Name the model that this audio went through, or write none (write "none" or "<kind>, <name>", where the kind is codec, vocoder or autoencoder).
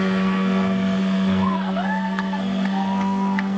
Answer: codec, SNAC